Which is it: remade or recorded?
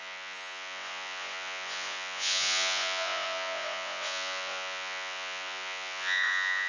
remade